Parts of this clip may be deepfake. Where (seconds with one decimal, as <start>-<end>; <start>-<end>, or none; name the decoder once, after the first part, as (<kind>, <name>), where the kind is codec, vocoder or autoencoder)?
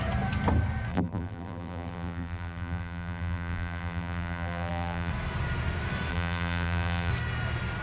0.9-5.1 (vocoder, BigVGAN v2); 6.1-7.1